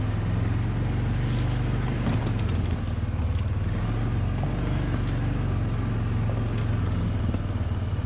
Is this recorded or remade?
recorded